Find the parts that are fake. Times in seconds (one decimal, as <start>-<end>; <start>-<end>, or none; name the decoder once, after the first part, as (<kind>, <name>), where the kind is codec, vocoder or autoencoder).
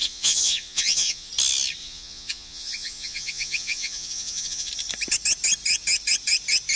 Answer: 0.0-1.3 (vocoder, Vocos); 1.8-4.7